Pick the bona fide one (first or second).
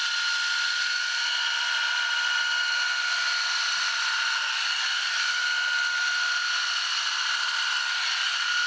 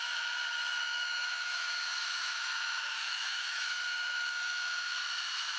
first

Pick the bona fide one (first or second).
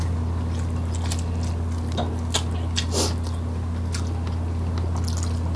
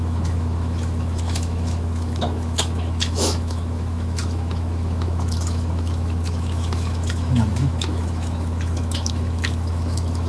first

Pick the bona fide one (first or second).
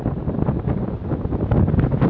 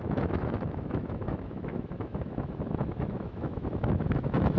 first